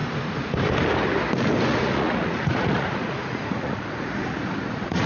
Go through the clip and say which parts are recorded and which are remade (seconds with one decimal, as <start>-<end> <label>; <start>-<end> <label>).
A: 0.0-1.7 recorded; 1.7-5.1 remade